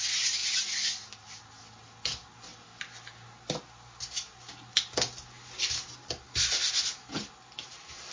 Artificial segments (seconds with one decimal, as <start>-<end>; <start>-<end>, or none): none